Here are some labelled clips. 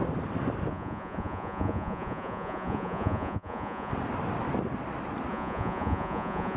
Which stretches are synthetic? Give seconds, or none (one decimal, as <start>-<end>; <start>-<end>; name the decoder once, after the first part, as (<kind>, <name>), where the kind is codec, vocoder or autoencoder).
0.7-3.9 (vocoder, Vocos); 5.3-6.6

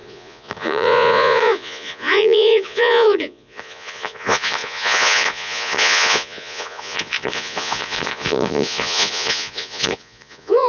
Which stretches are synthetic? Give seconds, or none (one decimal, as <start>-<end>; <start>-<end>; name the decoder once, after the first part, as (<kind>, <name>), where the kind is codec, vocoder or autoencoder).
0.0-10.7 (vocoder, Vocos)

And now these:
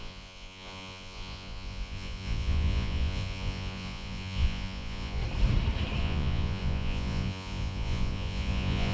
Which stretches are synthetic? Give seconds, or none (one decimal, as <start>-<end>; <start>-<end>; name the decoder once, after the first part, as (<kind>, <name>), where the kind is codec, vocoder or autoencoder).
0.0-5.2 (vocoder, Vocos); 6.0-8.9